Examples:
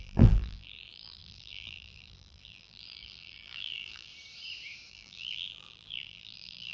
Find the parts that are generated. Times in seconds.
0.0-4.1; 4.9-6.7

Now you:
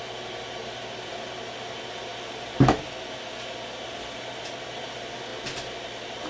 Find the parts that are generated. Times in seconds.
none

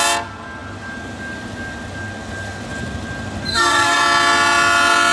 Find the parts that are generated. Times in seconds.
3.5-4.0

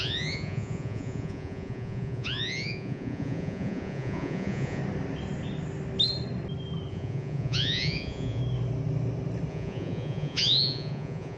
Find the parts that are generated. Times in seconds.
0.0-4.8; 6.9-8.4; 9.5-11.4

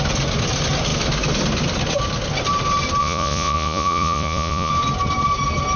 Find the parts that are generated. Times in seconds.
3.0-4.7

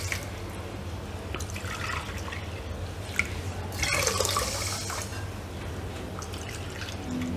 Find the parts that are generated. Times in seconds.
none

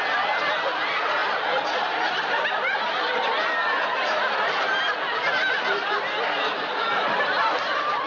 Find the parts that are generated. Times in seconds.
none